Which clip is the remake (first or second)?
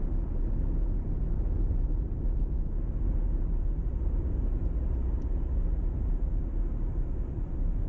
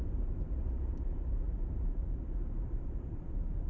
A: second